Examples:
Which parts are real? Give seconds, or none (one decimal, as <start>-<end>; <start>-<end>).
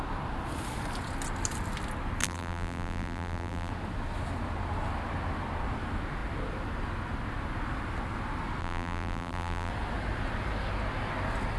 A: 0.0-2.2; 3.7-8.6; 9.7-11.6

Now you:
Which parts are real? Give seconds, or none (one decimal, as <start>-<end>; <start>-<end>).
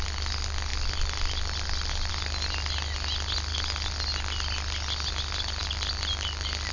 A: 0.0-6.7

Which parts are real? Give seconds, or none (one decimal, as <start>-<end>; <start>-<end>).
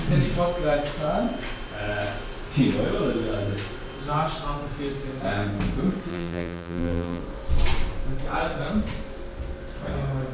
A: 0.0-6.1; 7.2-10.3